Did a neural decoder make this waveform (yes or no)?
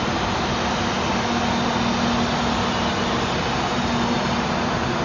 no